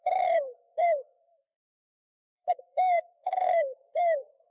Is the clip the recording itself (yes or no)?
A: no